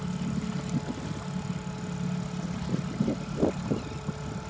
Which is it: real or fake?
real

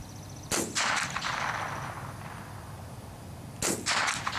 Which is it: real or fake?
real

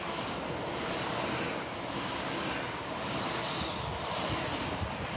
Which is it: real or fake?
real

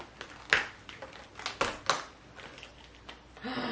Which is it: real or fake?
real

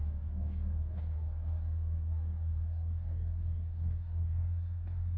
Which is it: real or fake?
fake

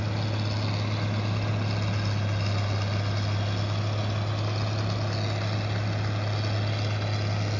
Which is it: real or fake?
real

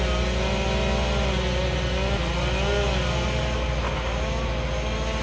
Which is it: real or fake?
real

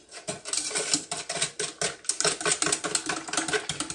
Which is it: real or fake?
real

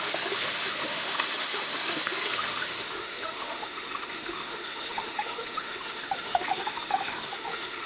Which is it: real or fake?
fake